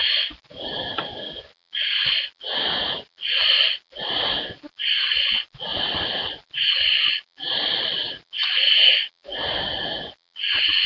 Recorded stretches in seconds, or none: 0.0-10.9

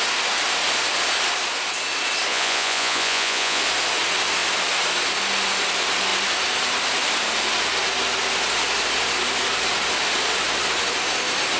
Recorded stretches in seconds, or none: 0.0-2.3; 3.6-11.6

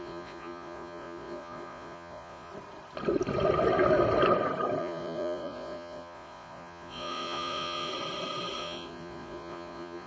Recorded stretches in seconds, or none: 2.5-4.8; 7.9-8.6

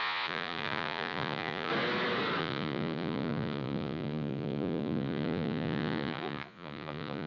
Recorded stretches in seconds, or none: 1.7-2.4